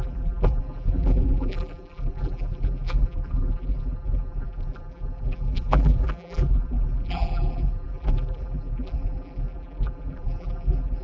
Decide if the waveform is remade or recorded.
remade